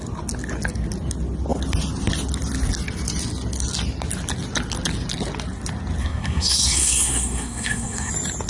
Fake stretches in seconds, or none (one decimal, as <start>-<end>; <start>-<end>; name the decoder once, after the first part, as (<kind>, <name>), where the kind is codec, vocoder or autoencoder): 6.0-8.1 (codec, SNAC)

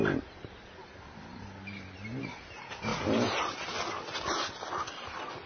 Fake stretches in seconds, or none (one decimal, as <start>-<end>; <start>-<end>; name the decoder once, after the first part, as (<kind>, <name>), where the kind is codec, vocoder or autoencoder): none